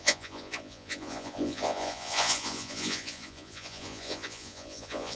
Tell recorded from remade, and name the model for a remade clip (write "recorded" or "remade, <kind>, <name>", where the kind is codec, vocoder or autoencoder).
remade, vocoder, Vocos